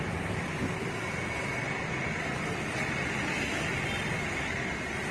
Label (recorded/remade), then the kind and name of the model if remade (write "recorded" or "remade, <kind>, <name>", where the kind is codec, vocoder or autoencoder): recorded